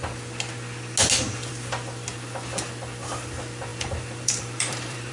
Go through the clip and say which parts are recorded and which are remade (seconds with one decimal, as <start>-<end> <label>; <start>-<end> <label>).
0.0-3.7 recorded; 3.7-5.1 remade